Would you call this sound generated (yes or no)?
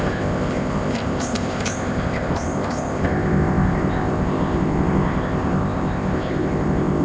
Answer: yes